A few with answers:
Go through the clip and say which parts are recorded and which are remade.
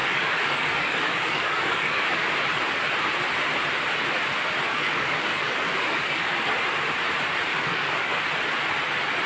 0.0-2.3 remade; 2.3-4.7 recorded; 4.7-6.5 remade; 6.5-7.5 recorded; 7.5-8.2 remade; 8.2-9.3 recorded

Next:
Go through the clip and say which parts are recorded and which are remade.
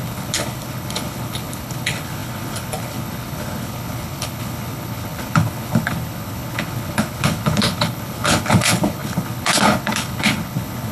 0.0-10.9 remade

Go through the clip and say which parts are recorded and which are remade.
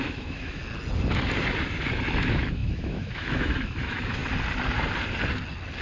0.0-0.6 remade; 0.6-2.2 recorded; 2.2-4.2 remade; 4.2-5.8 recorded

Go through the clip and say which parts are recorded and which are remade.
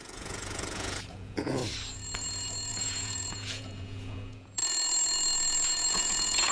0.0-1.6 remade; 1.6-2.7 recorded; 2.7-4.6 remade; 4.6-5.9 recorded; 5.9-6.5 remade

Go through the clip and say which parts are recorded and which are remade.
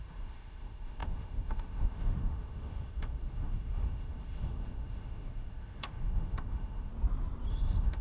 0.0-6.9 remade; 6.9-7.5 recorded; 7.5-8.0 remade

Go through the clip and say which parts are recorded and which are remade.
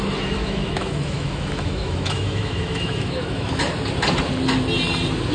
0.0-0.4 recorded; 0.4-3.6 remade; 3.6-5.3 recorded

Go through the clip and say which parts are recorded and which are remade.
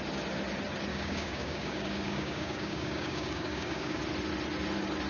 0.0-0.9 recorded; 0.9-4.0 remade; 4.0-5.1 recorded